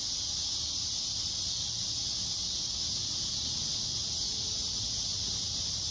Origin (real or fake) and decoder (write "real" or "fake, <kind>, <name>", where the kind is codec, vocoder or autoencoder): real